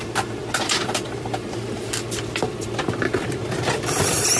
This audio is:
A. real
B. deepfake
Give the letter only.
B